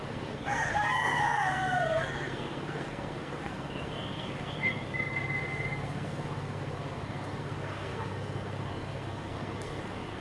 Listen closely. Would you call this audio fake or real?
fake